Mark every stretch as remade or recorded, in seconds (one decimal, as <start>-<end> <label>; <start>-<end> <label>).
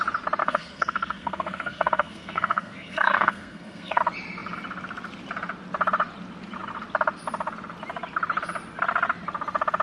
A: 0.0-0.4 recorded; 0.4-4.0 remade; 4.0-9.8 recorded